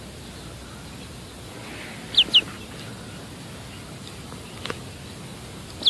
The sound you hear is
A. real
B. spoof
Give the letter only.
A